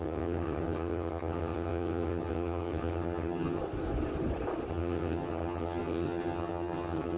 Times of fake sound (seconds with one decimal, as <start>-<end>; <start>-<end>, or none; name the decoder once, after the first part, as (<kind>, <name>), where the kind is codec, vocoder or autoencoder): 0.0-3.6 (vocoder, HiFi-GAN); 4.7-7.2